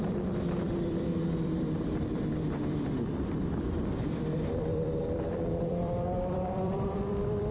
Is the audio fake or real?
fake